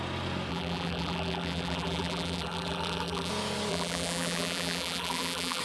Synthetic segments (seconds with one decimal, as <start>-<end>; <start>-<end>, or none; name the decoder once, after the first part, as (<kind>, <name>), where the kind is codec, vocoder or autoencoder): 0.5-3.3 (vocoder, BigVGAN v2); 3.7-5.6

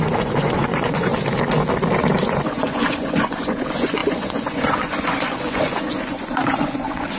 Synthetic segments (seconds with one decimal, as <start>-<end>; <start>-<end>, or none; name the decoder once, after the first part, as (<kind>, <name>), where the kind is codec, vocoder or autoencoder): 0.0-1.1 (vocoder, Vocos); 2.2-7.2

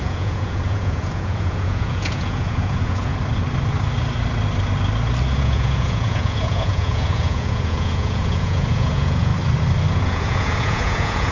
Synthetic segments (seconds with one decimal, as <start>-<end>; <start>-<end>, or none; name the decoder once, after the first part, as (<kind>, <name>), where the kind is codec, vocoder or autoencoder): 0.0-3.1 (vocoder, Vocos); 5.4-9.3; 9.9-11.3

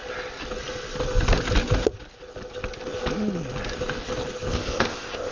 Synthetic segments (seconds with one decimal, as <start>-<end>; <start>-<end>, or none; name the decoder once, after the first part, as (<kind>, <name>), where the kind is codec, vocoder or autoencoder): 4.5-5.3 (codec, ZipCodec)

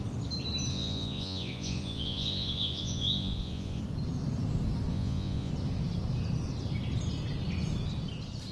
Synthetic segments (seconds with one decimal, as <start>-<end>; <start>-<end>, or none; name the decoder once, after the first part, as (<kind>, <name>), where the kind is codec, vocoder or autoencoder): 0.7-3.8 (vocoder, Vocos); 4.9-5.5

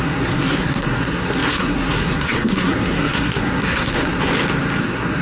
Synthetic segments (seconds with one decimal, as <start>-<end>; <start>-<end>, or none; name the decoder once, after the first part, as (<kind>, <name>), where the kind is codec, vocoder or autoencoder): 0.0-4.3 (codec, SNAC); 4.8-5.2

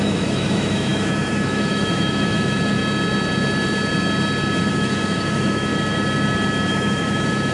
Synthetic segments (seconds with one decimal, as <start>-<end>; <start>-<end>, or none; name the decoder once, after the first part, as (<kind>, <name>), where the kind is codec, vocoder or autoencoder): 0.0-2.8 (autoencoder, DAC-VAE); 4.7-5.7; 6.7-7.5

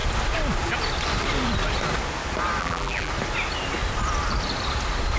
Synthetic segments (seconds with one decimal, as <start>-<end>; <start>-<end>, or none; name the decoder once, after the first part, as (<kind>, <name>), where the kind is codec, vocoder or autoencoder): 2.6-3.1 (vocoder, BigVGAN v2)